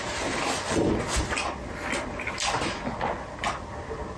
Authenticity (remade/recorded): recorded